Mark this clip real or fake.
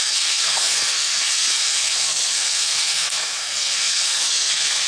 fake